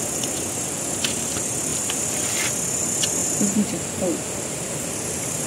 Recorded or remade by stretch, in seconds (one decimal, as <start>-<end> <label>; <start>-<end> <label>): 0.0-3.2 recorded; 3.2-5.5 remade